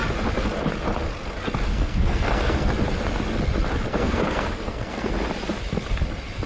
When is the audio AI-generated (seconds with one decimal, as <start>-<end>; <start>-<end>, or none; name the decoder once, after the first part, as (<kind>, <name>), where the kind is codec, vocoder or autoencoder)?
1.7-2.7 (codec, SNAC); 3.9-5.1